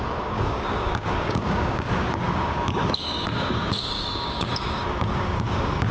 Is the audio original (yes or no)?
no